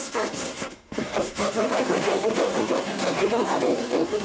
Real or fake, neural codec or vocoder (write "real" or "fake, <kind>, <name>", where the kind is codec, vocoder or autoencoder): fake, codec, SNAC